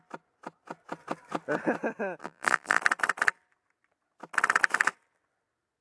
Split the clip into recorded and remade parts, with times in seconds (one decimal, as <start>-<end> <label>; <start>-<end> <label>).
0.0-2.2 recorded; 2.2-2.8 remade; 2.8-5.8 recorded